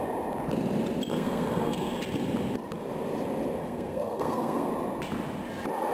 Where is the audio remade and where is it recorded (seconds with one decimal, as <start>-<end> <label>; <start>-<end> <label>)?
0.0-1.1 recorded; 1.1-1.9 remade; 1.9-3.6 recorded; 3.6-4.7 remade; 4.7-5.9 recorded